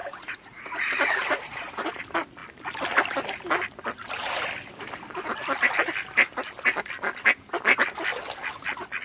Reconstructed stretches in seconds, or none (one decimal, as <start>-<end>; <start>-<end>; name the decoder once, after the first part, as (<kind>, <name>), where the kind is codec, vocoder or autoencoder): 0.0-2.0 (vocoder, Vocos)